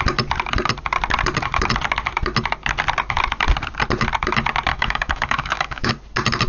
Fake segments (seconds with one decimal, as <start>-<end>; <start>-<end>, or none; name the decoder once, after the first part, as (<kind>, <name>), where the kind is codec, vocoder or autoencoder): 4.7-5.9 (autoencoder, DAC-VAE)